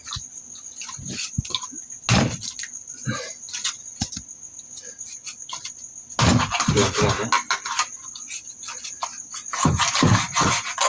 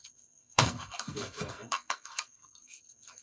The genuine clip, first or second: first